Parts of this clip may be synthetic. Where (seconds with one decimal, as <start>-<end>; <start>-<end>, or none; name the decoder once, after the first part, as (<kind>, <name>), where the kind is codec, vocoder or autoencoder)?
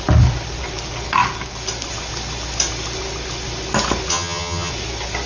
4.1-4.7 (vocoder, HiFi-GAN)